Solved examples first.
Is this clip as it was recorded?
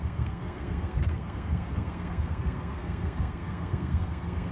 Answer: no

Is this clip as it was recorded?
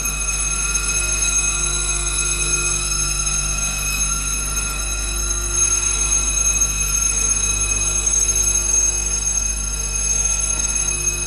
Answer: no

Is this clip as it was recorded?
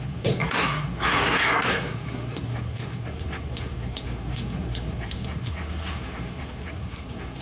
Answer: no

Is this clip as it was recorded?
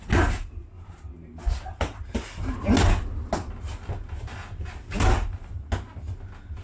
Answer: yes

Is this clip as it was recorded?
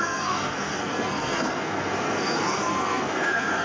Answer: no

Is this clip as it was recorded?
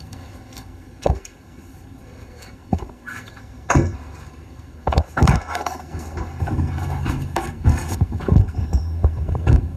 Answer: no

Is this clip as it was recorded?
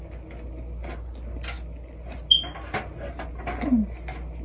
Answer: yes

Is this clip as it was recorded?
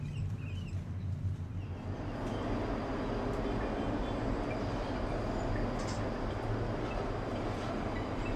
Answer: yes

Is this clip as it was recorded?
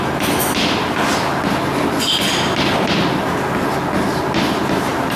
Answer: yes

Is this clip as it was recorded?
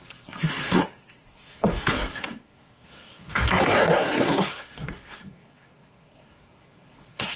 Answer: no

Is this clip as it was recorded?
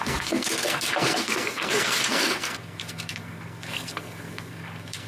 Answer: no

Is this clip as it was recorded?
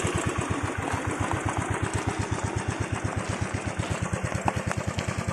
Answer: yes